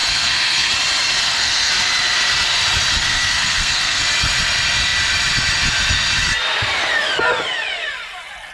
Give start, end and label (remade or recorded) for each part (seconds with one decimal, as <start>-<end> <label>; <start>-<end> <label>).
0.0-0.7 remade; 0.7-1.2 recorded; 1.2-1.7 remade; 1.7-3.0 recorded; 3.0-4.0 remade; 4.0-8.5 recorded